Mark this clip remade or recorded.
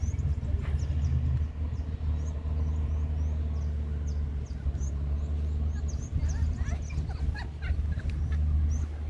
recorded